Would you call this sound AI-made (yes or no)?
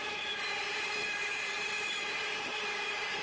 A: no